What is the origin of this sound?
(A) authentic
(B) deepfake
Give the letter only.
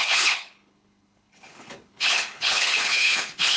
B